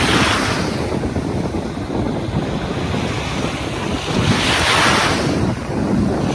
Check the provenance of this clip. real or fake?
real